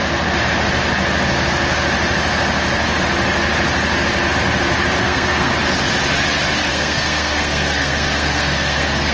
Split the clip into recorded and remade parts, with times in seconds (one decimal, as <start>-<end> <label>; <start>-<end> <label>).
0.0-5.0 recorded; 5.0-5.5 remade; 5.5-6.7 recorded; 6.7-9.1 remade

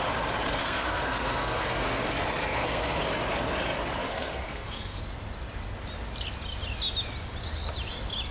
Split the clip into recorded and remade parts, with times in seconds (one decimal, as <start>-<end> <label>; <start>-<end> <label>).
0.0-0.6 recorded; 0.6-2.0 remade; 2.0-2.4 recorded; 2.4-3.0 remade; 3.0-4.0 recorded; 4.0-5.0 remade; 5.0-8.3 recorded